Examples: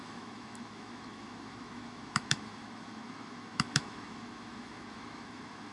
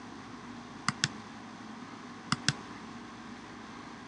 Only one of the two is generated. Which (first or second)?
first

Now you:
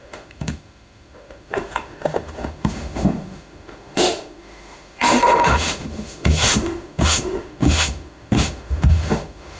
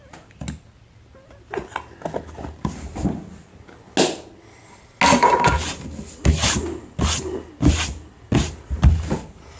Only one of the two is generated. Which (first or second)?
first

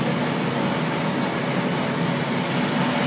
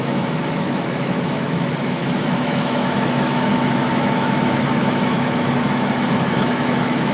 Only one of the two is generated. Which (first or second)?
second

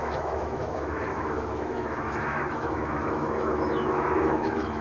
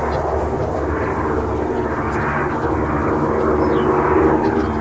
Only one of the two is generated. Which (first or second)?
first